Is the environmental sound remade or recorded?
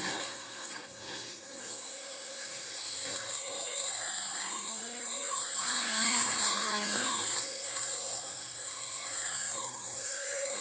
remade